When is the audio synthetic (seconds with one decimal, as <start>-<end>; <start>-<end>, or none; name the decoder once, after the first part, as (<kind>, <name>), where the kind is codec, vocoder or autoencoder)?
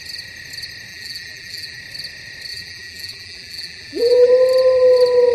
0.9-1.8 (vocoder, BigVGAN v2); 2.5-4.3